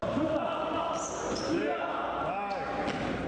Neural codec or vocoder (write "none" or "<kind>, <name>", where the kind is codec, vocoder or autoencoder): none